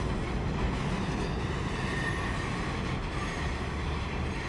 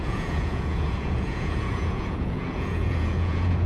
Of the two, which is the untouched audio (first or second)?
first